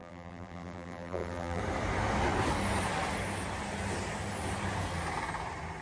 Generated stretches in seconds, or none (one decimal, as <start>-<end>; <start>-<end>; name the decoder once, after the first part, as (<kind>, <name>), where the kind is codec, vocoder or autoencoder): 0.0-1.6 (vocoder, BigVGAN v2)